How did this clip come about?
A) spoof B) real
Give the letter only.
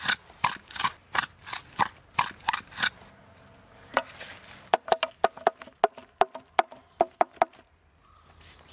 B